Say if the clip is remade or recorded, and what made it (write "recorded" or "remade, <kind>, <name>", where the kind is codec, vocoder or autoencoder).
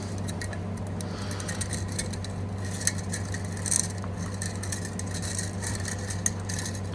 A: recorded